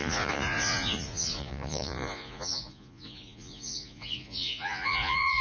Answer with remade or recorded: remade